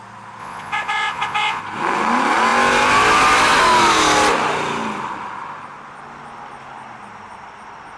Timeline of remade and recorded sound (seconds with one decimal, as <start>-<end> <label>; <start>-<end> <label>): 0.0-0.4 recorded; 0.4-1.6 remade; 1.6-8.0 recorded